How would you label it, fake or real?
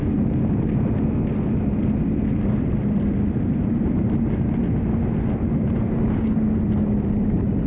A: real